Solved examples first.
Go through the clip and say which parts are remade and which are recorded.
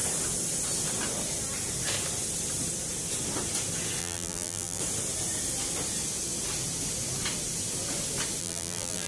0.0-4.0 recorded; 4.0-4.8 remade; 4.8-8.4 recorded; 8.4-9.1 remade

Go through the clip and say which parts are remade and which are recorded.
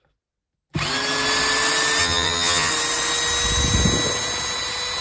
0.0-2.0 recorded; 2.0-2.7 remade; 2.7-5.0 recorded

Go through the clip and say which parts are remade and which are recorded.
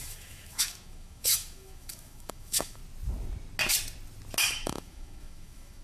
0.0-2.8 remade; 2.8-4.4 recorded; 4.4-5.8 remade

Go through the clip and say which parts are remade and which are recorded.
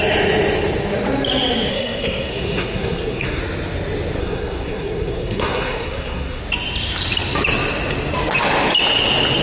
0.0-1.7 recorded; 1.7-3.4 remade; 3.4-4.2 recorded; 4.2-6.4 remade; 6.4-9.4 recorded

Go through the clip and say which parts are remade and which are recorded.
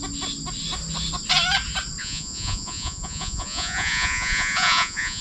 0.0-2.0 recorded; 2.0-5.2 remade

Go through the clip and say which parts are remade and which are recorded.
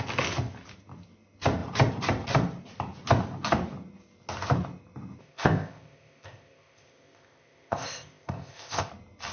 0.0-5.2 recorded; 5.2-8.9 remade; 8.9-9.3 recorded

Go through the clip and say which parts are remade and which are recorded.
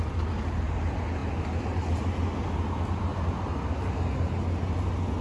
0.0-5.2 recorded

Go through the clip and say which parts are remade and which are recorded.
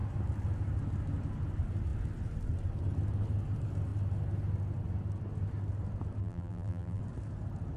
0.0-6.2 recorded; 6.2-7.0 remade; 7.0-7.8 recorded